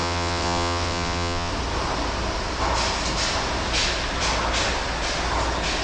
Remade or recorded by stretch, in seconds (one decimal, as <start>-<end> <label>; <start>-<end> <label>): 0.0-1.5 remade; 1.5-5.8 recorded